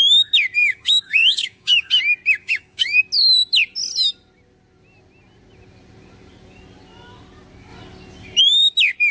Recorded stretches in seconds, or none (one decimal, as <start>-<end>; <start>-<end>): 0.0-0.6; 1.9-2.4; 3.0-9.1